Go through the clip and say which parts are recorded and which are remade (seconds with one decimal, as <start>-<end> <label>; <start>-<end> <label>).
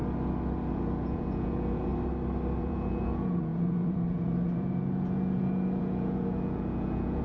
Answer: 0.0-0.7 recorded; 0.7-1.9 remade; 1.9-2.6 recorded; 2.6-7.2 remade